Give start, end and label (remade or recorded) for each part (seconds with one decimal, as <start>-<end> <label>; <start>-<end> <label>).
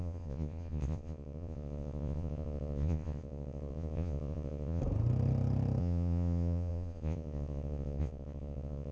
0.0-4.8 remade; 4.8-5.8 recorded; 5.8-8.9 remade